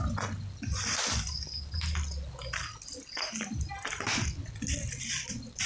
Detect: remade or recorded recorded